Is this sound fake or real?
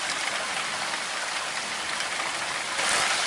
real